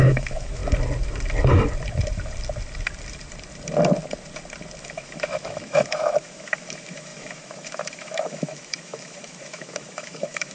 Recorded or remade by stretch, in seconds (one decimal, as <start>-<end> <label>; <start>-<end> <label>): 0.0-0.6 remade; 0.6-4.8 recorded; 4.8-10.5 remade